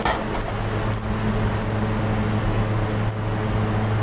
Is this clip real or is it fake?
real